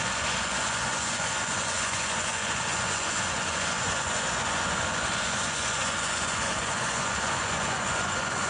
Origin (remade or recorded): remade